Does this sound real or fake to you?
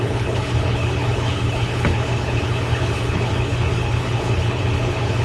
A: fake